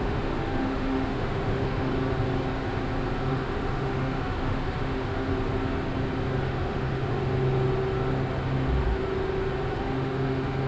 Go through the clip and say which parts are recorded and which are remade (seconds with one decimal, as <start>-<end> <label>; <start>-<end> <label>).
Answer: 0.0-1.9 remade; 1.9-3.3 recorded; 3.3-5.3 remade; 5.3-6.5 recorded; 6.5-7.1 remade; 7.1-9.7 recorded; 9.7-10.7 remade